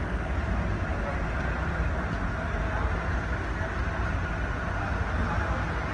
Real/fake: real